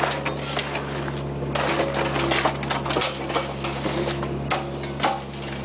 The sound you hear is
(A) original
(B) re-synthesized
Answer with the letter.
A